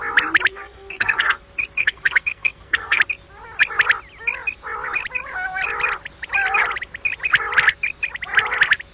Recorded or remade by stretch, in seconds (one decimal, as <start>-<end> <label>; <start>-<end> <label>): 0.0-0.5 recorded; 0.5-1.4 remade; 1.4-1.8 recorded; 1.8-3.0 remade; 3.0-8.9 recorded

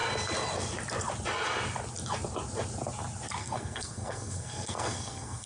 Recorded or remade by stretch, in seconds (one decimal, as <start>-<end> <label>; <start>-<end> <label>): 0.0-3.4 recorded; 3.4-5.5 remade

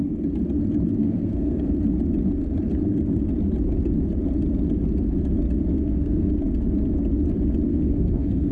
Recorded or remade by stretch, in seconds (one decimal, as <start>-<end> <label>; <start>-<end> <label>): 0.0-1.0 recorded; 1.0-1.6 remade; 1.6-5.7 recorded; 5.7-6.3 remade; 6.3-7.7 recorded; 7.7-8.5 remade

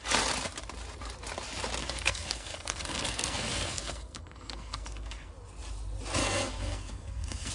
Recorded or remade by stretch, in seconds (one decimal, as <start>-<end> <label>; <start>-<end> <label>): 0.0-1.8 recorded; 1.8-5.3 remade; 5.3-6.2 recorded; 6.2-7.5 remade

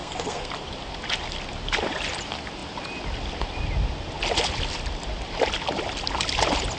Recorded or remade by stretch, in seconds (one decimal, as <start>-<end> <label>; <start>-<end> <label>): 0.0-0.5 remade; 0.5-6.8 recorded

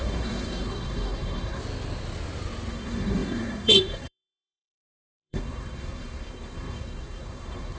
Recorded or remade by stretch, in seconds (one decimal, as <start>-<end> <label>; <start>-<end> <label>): 0.0-1.6 remade; 1.6-2.7 recorded; 2.7-7.8 remade